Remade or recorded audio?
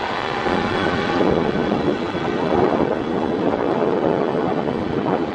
remade